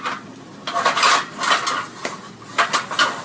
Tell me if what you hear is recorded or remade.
recorded